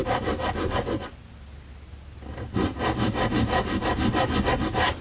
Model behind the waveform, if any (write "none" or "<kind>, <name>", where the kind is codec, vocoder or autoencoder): none